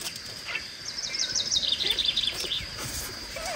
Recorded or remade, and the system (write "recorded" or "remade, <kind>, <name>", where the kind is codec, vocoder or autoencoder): remade, vocoder, BigVGAN v2